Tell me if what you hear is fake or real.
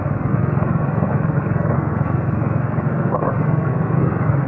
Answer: fake